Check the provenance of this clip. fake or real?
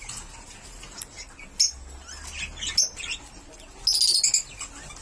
real